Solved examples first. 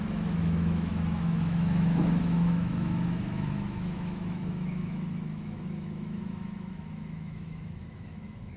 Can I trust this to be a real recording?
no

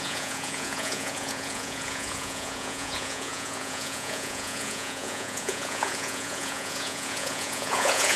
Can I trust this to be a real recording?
no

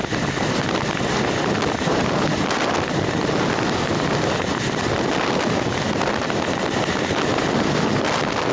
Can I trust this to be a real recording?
yes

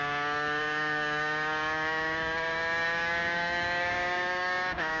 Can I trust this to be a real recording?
no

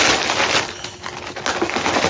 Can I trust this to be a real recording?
yes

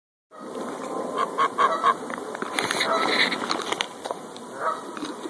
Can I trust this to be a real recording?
yes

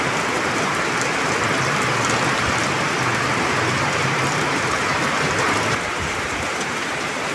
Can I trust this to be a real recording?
no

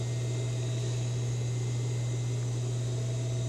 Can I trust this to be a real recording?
yes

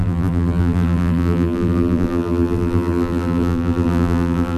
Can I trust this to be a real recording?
no